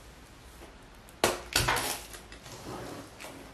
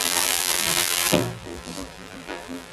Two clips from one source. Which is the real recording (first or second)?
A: first